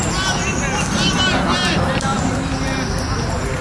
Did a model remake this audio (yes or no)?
no